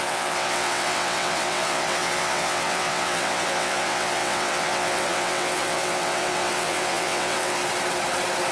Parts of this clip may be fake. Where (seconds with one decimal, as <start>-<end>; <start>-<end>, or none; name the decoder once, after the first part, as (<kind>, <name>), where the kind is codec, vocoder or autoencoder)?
0.0-7.6 (vocoder, WaveNeXt)